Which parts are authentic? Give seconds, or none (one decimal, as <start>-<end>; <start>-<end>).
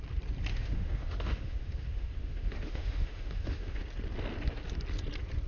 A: 0.0-0.5; 3.8-5.5